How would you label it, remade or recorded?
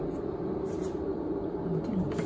recorded